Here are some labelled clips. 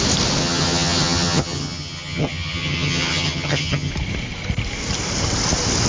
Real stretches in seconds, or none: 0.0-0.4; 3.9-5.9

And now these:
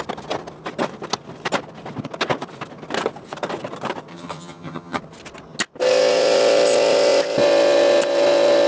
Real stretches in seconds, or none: 0.0-4.1; 5.0-8.7

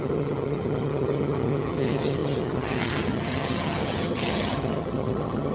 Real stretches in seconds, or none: none

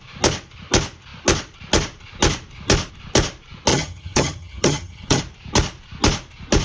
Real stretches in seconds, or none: 0.0-3.7; 5.2-6.6

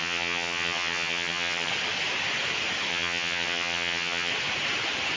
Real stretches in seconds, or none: 1.7-2.9; 4.3-5.2